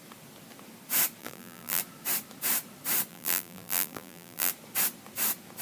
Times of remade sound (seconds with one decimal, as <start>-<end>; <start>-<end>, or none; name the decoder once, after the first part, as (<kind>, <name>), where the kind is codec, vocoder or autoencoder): 1.2-1.8 (vocoder, BigVGAN v2); 3.1-4.5